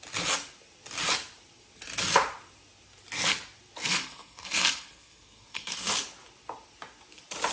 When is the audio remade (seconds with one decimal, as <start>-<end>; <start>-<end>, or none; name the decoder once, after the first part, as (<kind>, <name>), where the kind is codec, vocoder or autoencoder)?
3.8-5.9 (codec, SNAC)